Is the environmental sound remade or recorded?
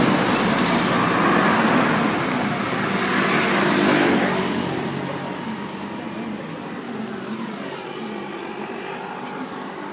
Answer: recorded